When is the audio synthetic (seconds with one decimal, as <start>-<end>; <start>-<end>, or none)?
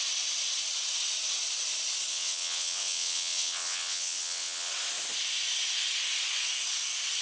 2.1-4.7